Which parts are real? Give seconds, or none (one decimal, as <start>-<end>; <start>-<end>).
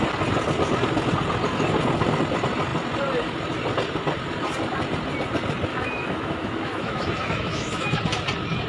0.0-5.7; 8.0-8.7